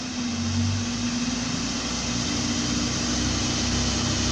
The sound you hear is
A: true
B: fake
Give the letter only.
A